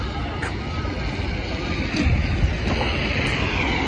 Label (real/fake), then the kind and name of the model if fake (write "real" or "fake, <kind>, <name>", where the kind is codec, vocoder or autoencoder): real